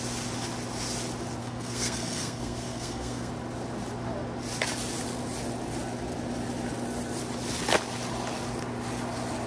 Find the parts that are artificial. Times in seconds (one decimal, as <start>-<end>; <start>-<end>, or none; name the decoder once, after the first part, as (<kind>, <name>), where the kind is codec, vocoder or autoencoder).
1.4-3.3 (codec, SNAC)